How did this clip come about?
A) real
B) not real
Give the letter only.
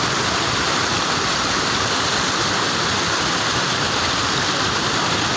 A